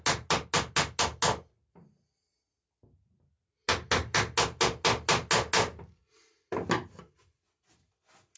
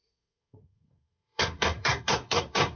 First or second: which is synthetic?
second